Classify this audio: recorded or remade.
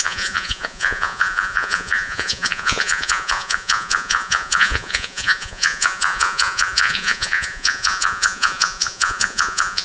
remade